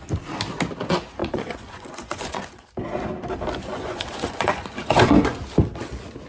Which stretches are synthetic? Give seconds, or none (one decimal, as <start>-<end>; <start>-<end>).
1.2-2.7; 3.7-5.4

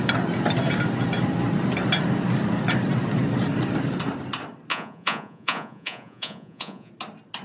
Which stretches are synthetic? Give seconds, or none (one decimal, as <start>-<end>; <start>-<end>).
4.7-6.9

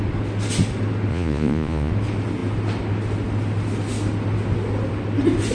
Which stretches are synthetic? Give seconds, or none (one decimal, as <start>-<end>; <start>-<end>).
1.1-1.9

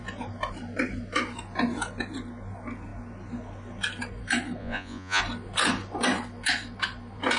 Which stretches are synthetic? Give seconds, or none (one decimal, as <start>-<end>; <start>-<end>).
4.6-5.2

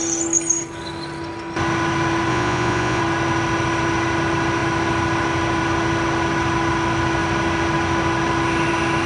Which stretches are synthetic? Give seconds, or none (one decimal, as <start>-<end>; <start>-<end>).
2.3-3.0

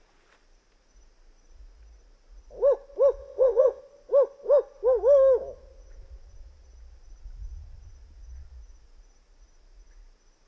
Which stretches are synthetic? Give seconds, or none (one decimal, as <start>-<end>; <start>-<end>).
3.2-3.8